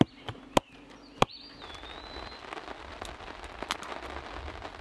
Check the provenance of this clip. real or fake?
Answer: real